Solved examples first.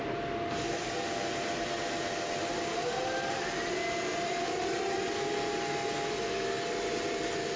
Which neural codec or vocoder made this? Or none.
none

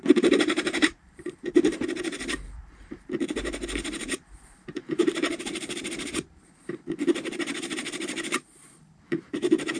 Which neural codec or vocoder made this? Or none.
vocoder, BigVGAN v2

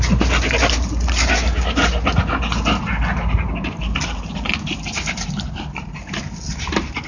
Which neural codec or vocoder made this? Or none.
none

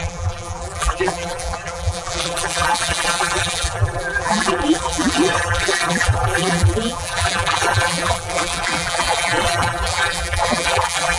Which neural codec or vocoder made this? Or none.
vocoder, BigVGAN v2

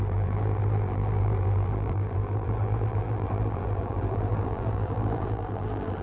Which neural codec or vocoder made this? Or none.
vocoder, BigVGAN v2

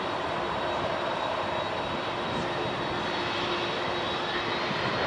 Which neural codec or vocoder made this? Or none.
none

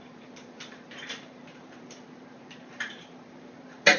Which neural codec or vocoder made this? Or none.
vocoder, BigVGAN v2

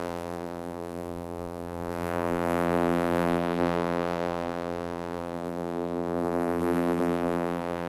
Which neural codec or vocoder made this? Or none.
vocoder, BigVGAN v2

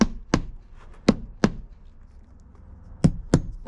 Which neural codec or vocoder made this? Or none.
none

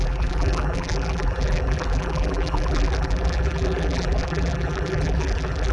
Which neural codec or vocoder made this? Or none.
vocoder, BigVGAN v2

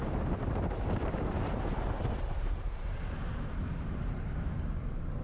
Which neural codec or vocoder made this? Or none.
vocoder, BigVGAN v2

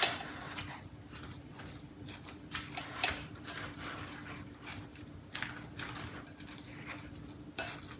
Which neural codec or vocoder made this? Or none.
none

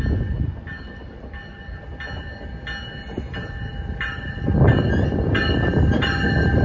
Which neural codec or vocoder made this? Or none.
none